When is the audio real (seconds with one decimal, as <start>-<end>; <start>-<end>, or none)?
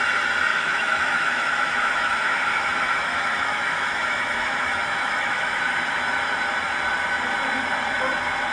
0.0-0.5; 5.6-8.5